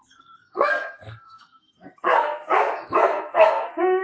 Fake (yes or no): yes